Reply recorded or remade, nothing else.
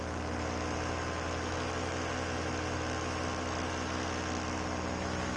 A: recorded